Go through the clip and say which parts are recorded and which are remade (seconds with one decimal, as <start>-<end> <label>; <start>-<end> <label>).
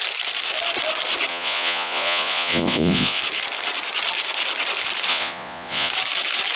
0.0-1.3 recorded; 1.3-3.2 remade; 3.2-5.1 recorded; 5.1-5.9 remade; 5.9-6.6 recorded